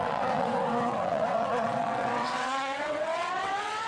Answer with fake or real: fake